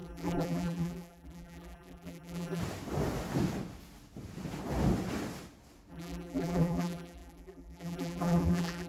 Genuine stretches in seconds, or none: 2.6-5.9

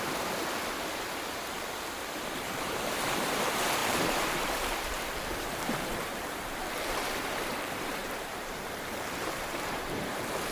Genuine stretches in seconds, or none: 0.4-2.4